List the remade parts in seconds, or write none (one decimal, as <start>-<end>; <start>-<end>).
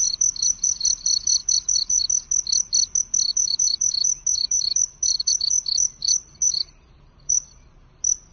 0.0-2.0; 3.3-7.8